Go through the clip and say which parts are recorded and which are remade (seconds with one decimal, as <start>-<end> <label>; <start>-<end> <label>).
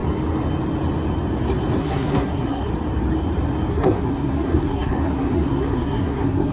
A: 0.0-1.8 recorded; 1.8-2.7 remade; 2.7-3.7 recorded; 3.7-6.5 remade